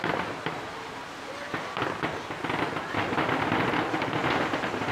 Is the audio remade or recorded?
recorded